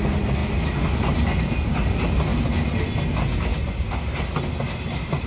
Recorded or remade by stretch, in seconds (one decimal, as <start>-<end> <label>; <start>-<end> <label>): 0.0-5.3 recorded